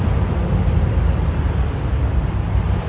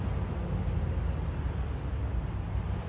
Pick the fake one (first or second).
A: first